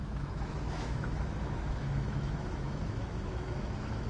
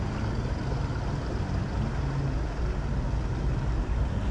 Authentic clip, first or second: second